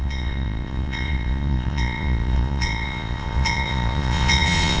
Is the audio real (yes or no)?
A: no